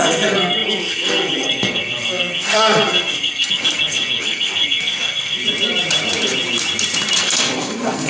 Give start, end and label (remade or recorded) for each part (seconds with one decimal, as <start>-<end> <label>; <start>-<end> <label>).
0.0-5.4 remade; 5.4-7.2 recorded; 7.2-8.1 remade